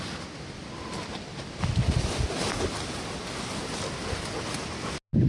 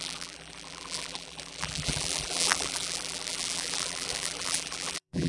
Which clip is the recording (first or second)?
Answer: first